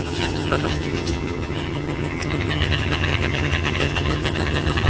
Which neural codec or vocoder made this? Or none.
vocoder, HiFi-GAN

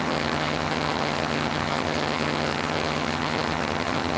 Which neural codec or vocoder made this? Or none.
vocoder, HiFi-GAN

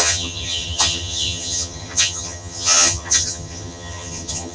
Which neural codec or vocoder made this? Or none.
vocoder, HiFi-GAN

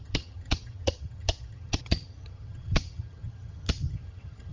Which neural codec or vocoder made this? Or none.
vocoder, HiFi-GAN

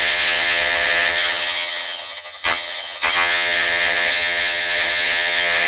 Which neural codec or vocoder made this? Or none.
vocoder, HiFi-GAN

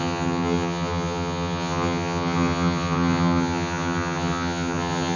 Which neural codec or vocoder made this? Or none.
vocoder, HiFi-GAN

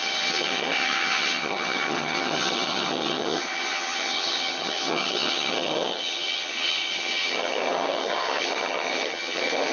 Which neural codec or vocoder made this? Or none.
vocoder, HiFi-GAN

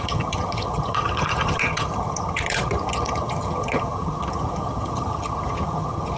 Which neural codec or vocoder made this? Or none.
vocoder, HiFi-GAN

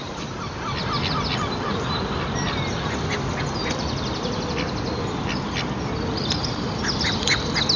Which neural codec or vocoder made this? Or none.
none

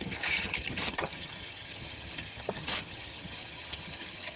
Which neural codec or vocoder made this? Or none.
vocoder, HiFi-GAN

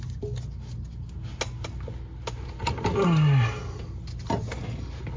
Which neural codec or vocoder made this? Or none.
none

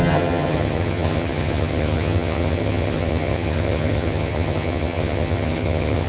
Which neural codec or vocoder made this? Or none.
vocoder, HiFi-GAN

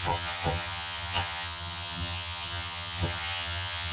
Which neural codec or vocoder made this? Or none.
vocoder, HiFi-GAN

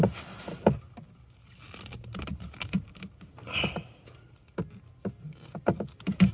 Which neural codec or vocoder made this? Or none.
none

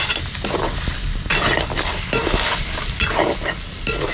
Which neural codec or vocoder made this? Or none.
none